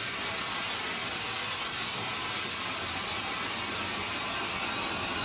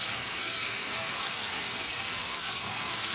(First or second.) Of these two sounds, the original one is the first